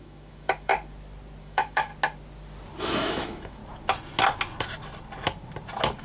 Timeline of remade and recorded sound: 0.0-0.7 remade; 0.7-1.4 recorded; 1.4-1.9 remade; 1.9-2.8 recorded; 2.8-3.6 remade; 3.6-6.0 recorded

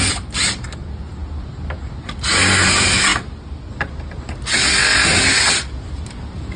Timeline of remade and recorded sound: 0.0-6.6 recorded

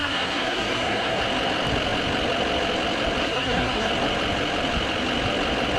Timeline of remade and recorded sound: 0.0-1.2 remade; 1.2-3.2 recorded; 3.2-3.9 remade; 3.9-5.8 recorded

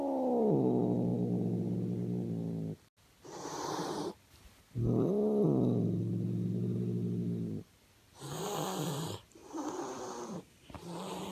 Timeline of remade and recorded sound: 0.0-9.4 recorded; 9.4-10.5 remade; 10.5-11.3 recorded

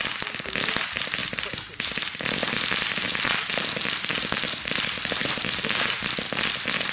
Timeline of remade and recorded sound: 0.0-6.9 recorded